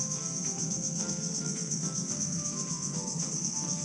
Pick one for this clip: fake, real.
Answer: fake